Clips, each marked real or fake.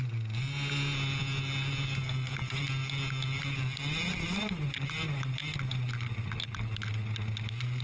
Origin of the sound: real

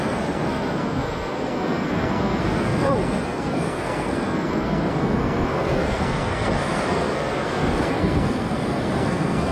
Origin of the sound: fake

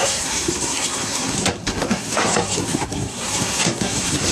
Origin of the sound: fake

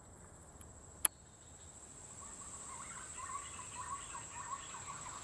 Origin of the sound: real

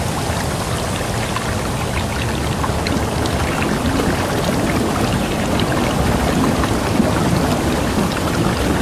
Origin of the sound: real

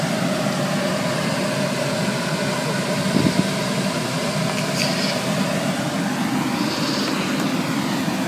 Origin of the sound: real